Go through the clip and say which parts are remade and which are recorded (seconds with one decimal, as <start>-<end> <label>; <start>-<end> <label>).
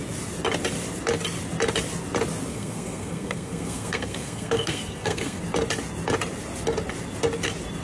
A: 0.0-2.5 recorded; 2.5-5.4 remade; 5.4-7.8 recorded